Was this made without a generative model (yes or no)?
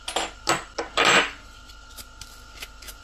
yes